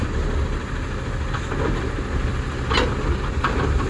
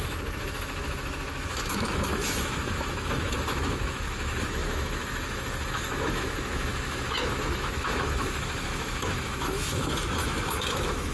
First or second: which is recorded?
first